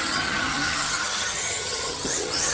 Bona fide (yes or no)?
no